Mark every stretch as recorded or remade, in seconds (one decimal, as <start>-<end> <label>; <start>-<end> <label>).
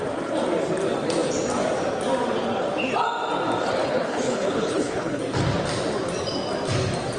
0.0-3.8 recorded; 3.8-5.2 remade; 5.2-7.2 recorded